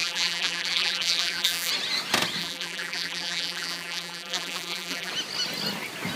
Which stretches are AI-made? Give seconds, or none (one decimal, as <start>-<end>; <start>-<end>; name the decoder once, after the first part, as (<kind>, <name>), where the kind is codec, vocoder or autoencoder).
0.0-1.7 (vocoder, BigVGAN v2); 2.4-5.1

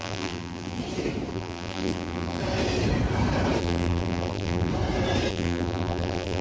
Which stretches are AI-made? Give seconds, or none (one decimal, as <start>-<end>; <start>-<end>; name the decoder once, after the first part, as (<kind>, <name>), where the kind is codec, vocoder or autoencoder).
0.0-0.8 (vocoder, BigVGAN v2); 1.3-2.4; 3.6-4.7; 5.3-6.4